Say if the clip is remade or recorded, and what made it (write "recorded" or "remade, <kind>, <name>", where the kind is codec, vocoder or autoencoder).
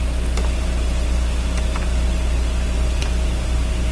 recorded